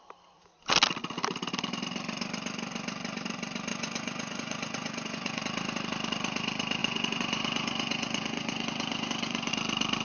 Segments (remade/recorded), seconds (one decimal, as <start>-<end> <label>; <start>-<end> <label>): 0.0-3.7 recorded; 3.7-5.4 remade; 5.4-6.8 recorded; 6.8-9.5 remade; 9.5-10.0 recorded